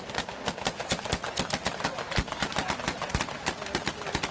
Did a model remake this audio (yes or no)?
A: no